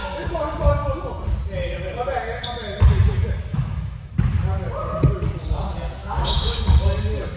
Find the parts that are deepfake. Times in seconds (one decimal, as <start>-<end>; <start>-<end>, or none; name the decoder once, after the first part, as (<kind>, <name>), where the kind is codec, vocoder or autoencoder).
3.5-4.1 (autoencoder, DAC-VAE); 6.0-6.6